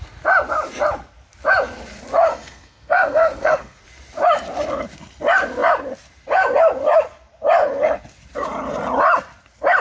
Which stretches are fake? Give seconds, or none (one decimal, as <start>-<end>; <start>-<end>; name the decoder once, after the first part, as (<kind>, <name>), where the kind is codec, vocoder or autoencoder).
2.3-3.8 (codec, SNAC)